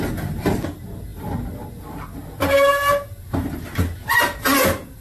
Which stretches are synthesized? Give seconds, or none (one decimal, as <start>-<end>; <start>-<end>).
none